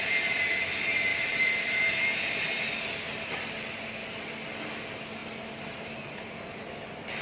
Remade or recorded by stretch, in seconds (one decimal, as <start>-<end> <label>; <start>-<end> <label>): 0.0-1.1 recorded; 1.1-2.6 remade; 2.6-5.2 recorded; 5.2-6.2 remade; 6.2-7.2 recorded